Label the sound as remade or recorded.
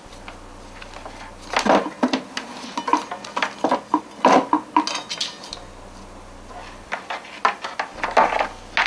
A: recorded